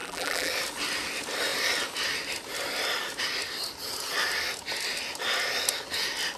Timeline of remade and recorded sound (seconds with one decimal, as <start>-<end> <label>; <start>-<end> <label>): 0.0-0.5 remade; 0.5-6.4 recorded